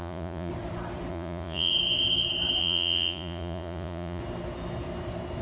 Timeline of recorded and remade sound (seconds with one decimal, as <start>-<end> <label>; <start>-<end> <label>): 0.0-0.5 remade; 0.5-1.1 recorded; 1.1-1.7 remade; 1.7-2.6 recorded; 2.6-4.2 remade; 4.2-5.4 recorded